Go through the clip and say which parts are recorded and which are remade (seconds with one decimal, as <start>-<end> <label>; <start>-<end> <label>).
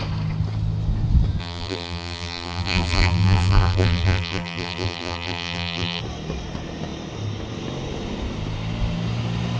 0.0-1.4 recorded; 1.4-6.0 remade; 6.0-9.6 recorded